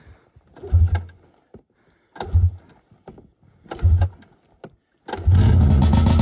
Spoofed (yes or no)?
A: no